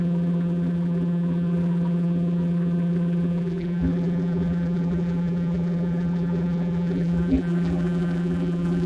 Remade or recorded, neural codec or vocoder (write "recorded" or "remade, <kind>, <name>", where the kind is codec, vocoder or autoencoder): remade, vocoder, BigVGAN v2